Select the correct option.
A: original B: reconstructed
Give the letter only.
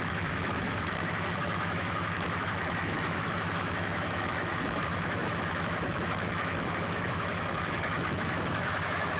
B